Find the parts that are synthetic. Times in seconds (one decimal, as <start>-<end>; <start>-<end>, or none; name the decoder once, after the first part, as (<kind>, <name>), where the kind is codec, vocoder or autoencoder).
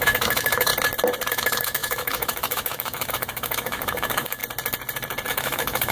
0.0-0.7 (autoencoder, DAC-VAE); 1.3-4.4; 5.3-5.9